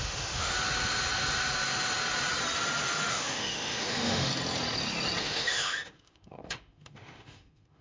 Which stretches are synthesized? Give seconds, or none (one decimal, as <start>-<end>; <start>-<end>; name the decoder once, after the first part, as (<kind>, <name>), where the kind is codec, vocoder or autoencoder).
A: 0.0-0.5 (autoencoder, DAC-VAE); 3.1-4.3; 5.2-7.8